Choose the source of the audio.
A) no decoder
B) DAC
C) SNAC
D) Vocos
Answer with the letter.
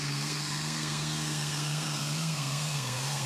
C